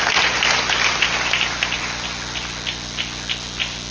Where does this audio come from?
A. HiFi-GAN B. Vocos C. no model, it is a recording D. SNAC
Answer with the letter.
C